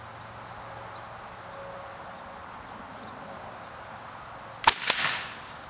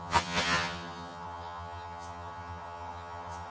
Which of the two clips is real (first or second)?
first